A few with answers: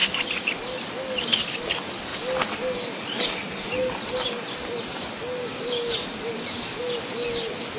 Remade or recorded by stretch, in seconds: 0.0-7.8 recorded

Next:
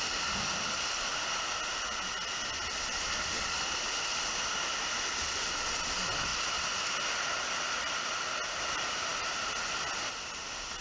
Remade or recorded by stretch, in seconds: 0.0-10.8 recorded

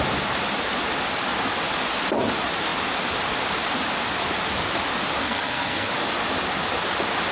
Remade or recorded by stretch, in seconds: 0.0-5.2 recorded; 5.2-5.9 remade; 5.9-7.3 recorded

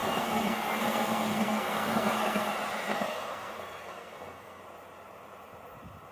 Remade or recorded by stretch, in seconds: 0.0-2.5 remade; 2.5-2.9 recorded; 2.9-4.6 remade; 4.6-6.1 recorded